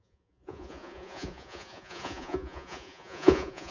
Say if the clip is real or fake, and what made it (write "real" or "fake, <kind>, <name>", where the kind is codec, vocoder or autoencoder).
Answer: fake, vocoder, Vocos